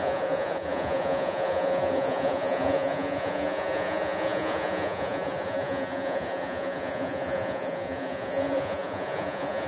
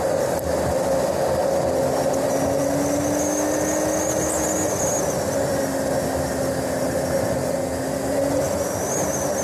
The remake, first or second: first